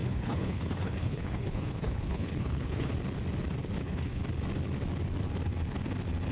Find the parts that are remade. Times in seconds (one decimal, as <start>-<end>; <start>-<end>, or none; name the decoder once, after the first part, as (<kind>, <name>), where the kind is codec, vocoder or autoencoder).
0.0-2.9 (codec, HILCodec); 3.8-4.2